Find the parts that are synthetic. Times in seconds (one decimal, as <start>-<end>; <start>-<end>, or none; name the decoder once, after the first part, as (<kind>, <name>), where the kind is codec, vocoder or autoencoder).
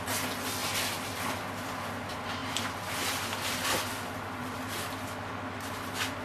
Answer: none